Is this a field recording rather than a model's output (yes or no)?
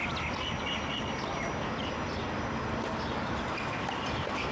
yes